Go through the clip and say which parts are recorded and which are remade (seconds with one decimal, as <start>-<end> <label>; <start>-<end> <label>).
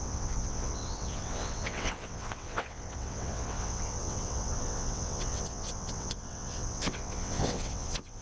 0.0-8.2 remade